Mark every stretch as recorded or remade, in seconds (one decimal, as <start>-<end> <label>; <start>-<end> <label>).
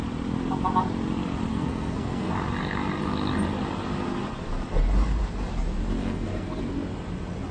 0.0-1.5 recorded; 1.5-2.3 remade; 2.3-6.0 recorded; 6.0-6.6 remade; 6.6-7.5 recorded